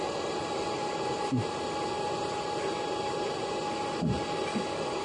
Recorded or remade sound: remade